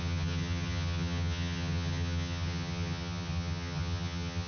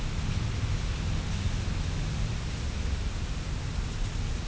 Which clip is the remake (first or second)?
first